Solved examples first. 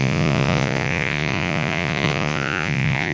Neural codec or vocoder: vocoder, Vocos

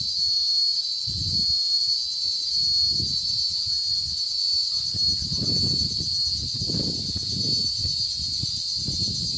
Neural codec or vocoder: none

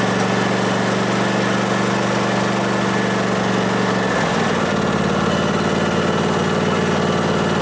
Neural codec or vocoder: none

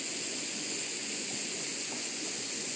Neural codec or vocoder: vocoder, Vocos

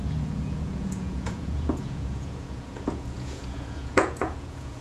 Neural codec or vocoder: vocoder, Vocos